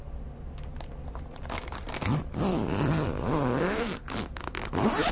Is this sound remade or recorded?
recorded